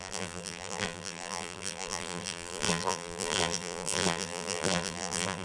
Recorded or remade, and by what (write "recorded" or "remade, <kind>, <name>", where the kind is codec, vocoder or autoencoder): remade, vocoder, BigVGAN v2